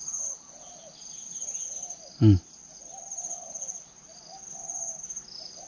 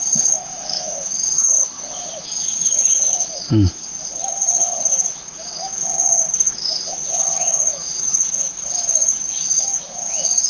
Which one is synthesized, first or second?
second